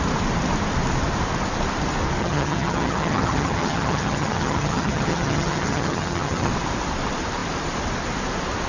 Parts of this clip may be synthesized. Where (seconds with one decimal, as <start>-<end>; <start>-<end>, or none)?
2.2-6.5